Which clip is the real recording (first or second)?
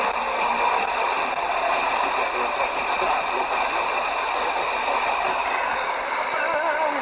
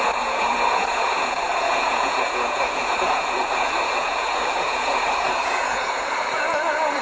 first